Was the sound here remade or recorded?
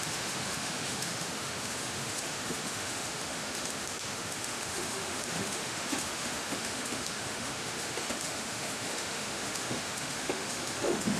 remade